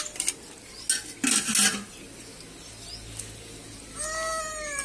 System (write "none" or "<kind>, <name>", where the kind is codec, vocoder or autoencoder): none